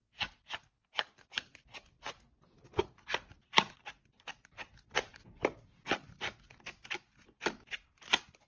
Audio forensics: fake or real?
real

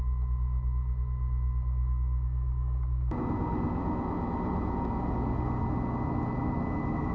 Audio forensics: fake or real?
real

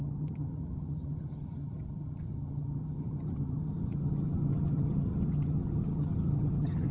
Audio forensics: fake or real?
fake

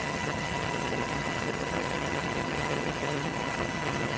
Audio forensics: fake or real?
fake